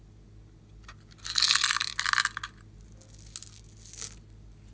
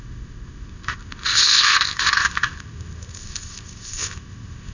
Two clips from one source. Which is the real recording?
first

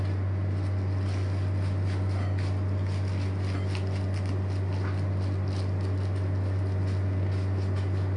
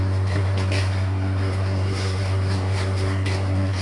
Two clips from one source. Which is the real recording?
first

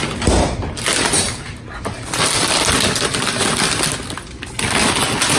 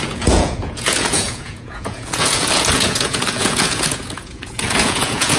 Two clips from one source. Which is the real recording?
first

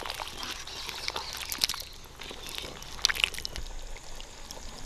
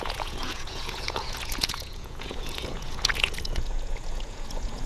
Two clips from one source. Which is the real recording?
first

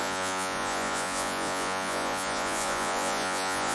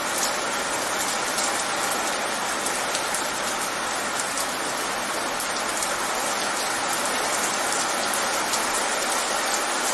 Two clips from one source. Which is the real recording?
second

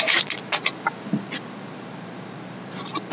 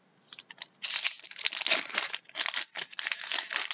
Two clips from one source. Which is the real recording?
second